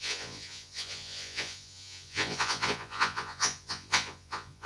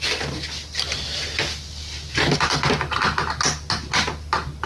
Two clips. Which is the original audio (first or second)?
second